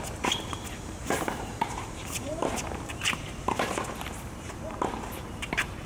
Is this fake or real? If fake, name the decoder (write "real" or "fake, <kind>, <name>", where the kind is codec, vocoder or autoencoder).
fake, vocoder, BigVGAN v2